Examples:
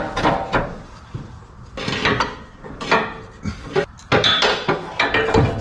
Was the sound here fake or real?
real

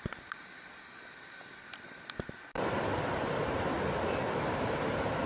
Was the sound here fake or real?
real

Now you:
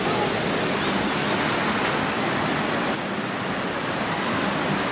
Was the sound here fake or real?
real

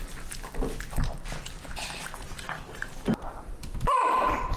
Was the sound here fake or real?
real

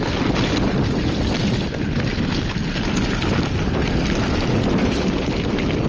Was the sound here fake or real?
real